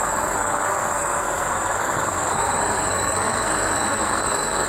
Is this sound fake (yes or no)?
yes